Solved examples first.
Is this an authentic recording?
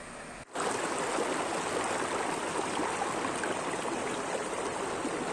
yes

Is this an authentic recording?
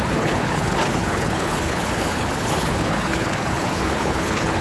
no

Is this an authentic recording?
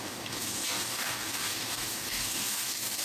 no